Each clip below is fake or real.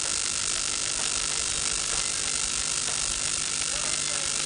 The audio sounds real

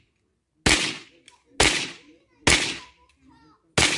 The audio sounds real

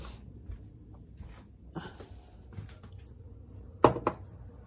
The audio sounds real